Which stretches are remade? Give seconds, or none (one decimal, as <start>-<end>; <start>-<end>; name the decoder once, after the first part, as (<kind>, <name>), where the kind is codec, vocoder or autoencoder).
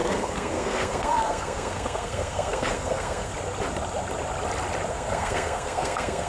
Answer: 0.0-3.3 (codec, SNAC); 4.9-6.3